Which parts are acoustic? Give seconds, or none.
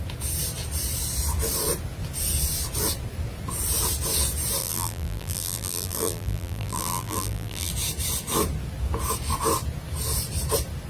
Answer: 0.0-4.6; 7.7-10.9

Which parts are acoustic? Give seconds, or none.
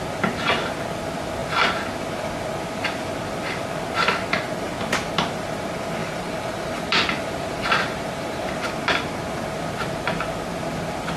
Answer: 0.0-6.0; 8.6-11.2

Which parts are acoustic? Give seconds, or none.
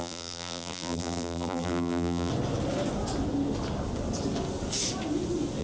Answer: 2.3-5.6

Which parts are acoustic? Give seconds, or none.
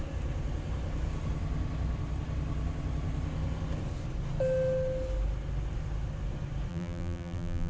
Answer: 0.0-6.7